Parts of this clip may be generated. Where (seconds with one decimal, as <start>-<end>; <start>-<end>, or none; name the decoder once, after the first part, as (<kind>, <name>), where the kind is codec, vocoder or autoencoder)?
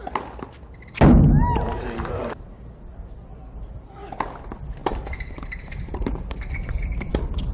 4.8-7.1 (vocoder, BigVGAN v2)